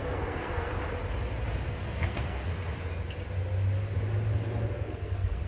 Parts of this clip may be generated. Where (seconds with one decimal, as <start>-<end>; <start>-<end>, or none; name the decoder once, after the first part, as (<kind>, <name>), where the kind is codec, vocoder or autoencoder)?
0.0-0.7 (codec, SNAC); 1.7-2.5; 4.7-5.5